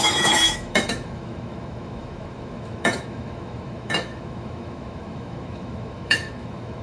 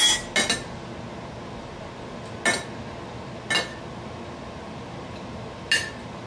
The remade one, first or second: first